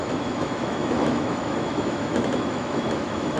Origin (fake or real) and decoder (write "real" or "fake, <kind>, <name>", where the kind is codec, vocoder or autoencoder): fake, autoencoder, DAC-VAE